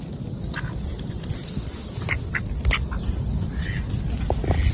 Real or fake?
real